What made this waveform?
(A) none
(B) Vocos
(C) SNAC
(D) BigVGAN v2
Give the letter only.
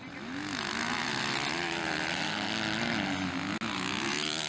A